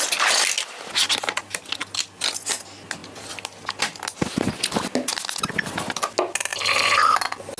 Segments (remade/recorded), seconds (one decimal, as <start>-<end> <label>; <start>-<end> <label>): 0.0-7.6 recorded